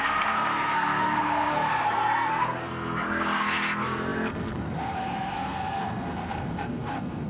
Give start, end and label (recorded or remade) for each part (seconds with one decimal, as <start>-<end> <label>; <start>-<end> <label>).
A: 0.0-7.3 remade

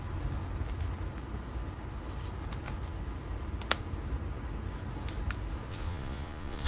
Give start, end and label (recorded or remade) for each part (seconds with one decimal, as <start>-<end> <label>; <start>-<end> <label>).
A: 0.0-5.7 recorded; 5.7-6.7 remade

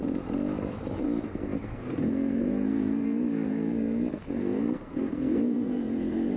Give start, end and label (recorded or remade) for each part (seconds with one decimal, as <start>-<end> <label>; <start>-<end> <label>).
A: 0.0-1.0 recorded; 1.0-6.4 remade

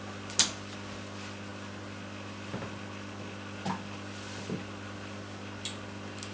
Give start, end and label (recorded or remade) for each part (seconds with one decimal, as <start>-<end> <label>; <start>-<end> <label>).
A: 0.0-6.3 recorded